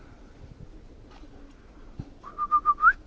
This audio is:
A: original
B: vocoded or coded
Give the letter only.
A